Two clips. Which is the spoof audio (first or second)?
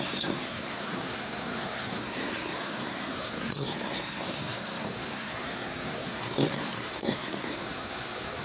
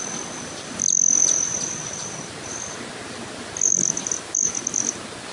first